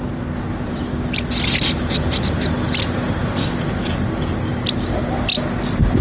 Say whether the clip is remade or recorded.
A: remade